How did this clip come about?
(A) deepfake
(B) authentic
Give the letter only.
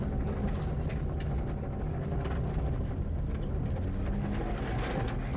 B